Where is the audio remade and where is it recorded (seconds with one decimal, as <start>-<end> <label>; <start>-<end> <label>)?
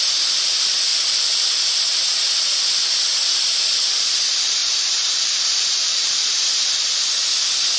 0.0-0.9 recorded; 0.9-1.5 remade; 1.5-4.6 recorded; 4.6-6.7 remade; 6.7-7.8 recorded